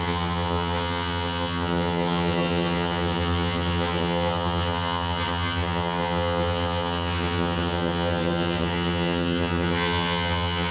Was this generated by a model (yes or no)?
yes